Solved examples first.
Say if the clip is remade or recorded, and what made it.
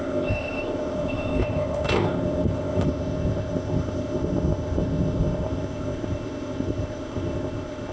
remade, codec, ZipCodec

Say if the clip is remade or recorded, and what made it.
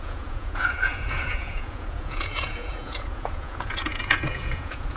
remade, vocoder, Vocos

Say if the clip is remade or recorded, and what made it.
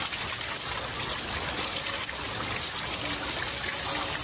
recorded